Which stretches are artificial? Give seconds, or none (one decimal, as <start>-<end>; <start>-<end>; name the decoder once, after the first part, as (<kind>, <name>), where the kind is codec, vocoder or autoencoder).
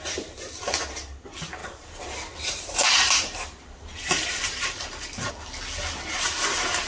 1.6-5.3 (vocoder, BigVGAN v2)